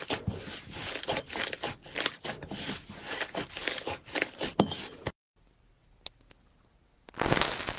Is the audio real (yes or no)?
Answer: yes